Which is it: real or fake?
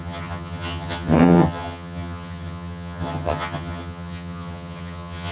fake